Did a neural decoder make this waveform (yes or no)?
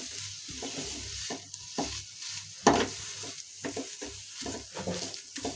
no